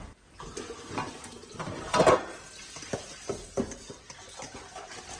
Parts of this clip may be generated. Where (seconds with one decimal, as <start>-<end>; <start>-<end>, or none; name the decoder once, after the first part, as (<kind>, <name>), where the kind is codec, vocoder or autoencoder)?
none

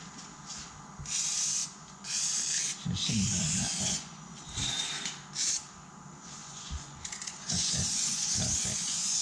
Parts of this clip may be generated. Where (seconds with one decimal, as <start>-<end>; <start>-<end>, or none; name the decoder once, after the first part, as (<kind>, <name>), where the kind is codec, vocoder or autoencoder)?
1.6-2.2 (vocoder, Vocos); 3.7-4.4; 6.4-9.2

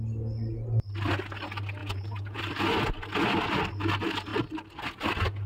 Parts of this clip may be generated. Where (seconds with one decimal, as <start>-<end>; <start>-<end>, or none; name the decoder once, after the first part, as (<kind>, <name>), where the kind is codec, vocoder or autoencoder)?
1.8-2.4 (vocoder, Vocos)

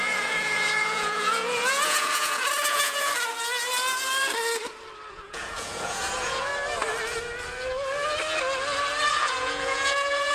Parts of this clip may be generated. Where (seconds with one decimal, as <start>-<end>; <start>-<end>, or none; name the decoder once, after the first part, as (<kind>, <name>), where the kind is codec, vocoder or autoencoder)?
0.0-3.1 (vocoder, Vocos); 5.1-6.5; 9.1-10.3